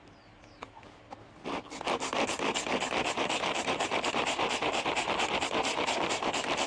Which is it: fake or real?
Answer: real